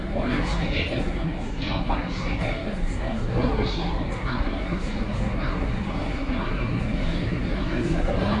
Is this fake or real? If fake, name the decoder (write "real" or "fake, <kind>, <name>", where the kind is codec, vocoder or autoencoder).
fake, codec, SNAC